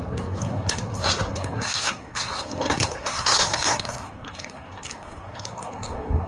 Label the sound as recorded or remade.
remade